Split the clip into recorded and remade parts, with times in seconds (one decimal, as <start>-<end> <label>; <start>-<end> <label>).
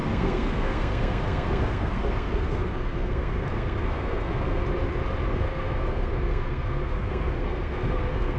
0.0-4.6 remade; 4.6-5.3 recorded; 5.3-8.4 remade